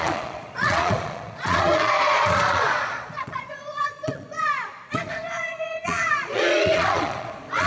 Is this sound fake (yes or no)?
yes